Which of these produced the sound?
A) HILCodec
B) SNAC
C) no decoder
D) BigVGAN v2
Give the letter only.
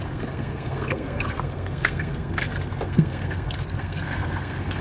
B